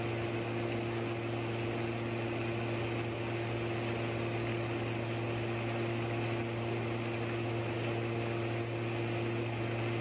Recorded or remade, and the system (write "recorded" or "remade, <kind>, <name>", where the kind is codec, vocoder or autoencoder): recorded